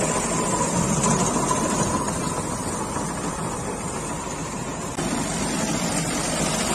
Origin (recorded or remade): recorded